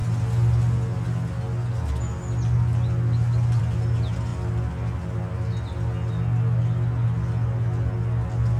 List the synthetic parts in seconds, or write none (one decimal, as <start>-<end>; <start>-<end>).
none